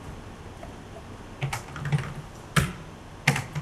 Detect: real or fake real